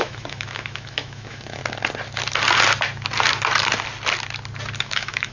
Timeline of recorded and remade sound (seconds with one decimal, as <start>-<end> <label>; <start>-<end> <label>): 0.0-1.6 remade; 1.6-4.8 recorded; 4.8-5.3 remade